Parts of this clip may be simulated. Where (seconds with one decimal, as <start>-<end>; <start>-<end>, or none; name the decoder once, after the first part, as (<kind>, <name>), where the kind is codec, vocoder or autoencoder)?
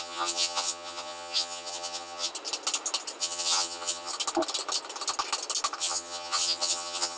0.0-2.3 (vocoder, HiFi-GAN); 3.2-4.1; 5.8-7.2